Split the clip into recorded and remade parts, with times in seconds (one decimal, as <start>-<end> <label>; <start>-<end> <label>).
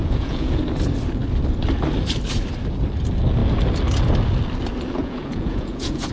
0.0-0.6 remade; 0.6-5.0 recorded; 5.0-6.1 remade